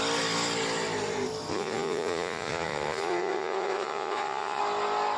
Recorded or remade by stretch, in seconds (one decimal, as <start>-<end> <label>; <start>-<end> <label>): 0.0-1.5 recorded; 1.5-4.6 remade; 4.6-5.2 recorded